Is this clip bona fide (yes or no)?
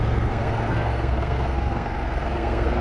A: no